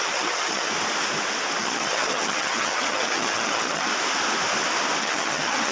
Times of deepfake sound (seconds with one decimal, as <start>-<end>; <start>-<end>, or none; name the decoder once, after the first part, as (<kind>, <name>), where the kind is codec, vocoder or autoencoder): 0.0-0.7 (vocoder, HiFi-GAN); 1.6-3.9; 5.0-5.7